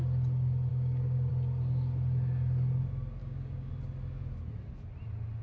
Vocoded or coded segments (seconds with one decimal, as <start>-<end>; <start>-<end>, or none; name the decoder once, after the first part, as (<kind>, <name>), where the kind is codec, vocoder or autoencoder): 0.7-1.3 (codec, DAC); 3.2-3.7

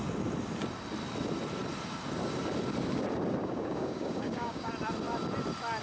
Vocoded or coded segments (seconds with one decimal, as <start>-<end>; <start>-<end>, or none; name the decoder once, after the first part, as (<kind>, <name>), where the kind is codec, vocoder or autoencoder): 3.4-4.7 (codec, DAC)